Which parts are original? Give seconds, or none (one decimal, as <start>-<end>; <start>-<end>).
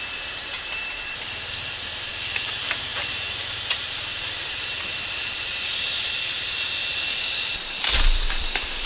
none